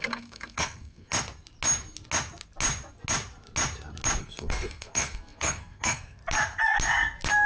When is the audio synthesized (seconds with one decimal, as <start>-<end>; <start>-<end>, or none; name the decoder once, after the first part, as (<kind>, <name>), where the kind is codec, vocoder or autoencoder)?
0.0-1.1 (codec, SNAC); 4.2-6.2